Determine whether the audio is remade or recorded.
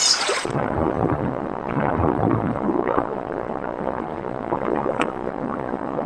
remade